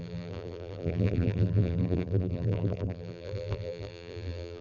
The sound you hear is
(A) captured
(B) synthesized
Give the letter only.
B